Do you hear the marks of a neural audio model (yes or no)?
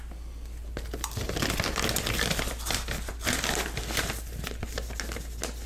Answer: no